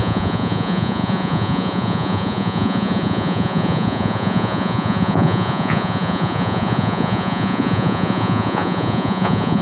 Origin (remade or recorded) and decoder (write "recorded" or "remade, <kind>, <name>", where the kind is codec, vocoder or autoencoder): remade, vocoder, Vocos